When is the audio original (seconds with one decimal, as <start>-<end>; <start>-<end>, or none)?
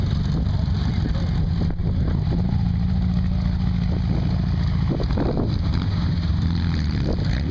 0.0-7.5